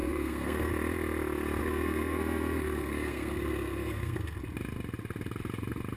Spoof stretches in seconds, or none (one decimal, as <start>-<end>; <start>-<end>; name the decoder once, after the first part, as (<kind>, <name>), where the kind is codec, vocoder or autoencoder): 0.0-0.7 (codec, SNAC); 1.6-4.4